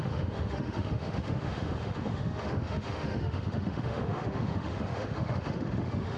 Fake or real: fake